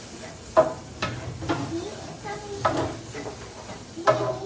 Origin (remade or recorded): recorded